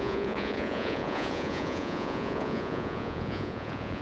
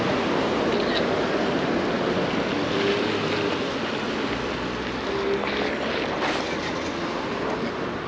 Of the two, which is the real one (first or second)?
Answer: second